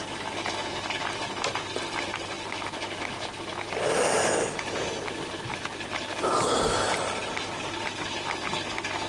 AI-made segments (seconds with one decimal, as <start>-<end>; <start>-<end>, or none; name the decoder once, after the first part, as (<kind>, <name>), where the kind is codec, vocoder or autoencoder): none